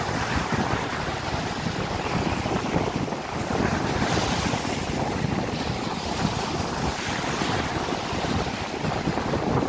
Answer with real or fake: real